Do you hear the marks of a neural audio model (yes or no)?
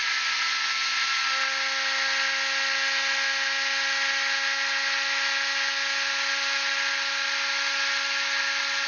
no